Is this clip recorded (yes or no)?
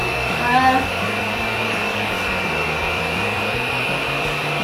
no